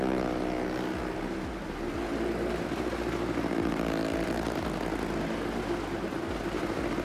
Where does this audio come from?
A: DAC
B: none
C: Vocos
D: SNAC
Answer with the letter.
B